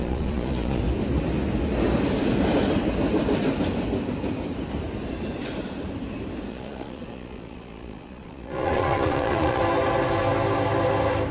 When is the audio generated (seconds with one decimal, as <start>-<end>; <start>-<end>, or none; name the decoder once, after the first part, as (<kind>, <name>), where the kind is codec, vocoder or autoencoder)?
0.0-0.8 (vocoder, Vocos); 6.5-9.6